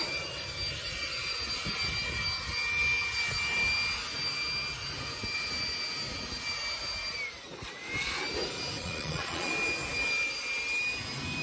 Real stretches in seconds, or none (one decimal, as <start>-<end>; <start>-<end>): 0.0-8.8; 9.5-11.4